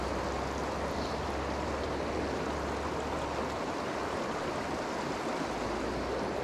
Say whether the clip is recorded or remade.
recorded